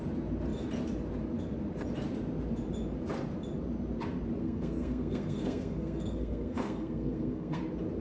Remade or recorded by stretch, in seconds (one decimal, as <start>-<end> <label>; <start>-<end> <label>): 0.0-4.4 recorded; 4.4-7.6 remade; 7.6-8.0 recorded